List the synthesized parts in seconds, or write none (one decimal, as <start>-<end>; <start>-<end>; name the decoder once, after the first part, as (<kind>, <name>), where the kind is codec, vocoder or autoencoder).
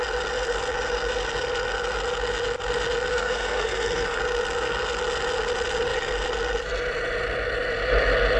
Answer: 3.1-4.2 (codec, SNAC)